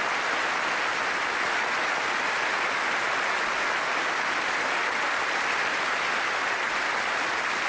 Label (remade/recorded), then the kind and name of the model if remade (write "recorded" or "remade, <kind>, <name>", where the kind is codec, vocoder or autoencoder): recorded